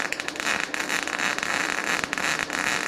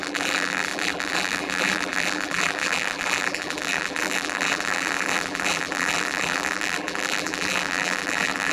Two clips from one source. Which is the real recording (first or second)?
first